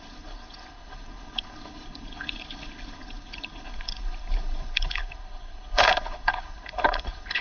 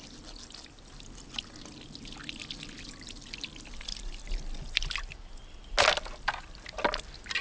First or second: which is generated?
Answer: first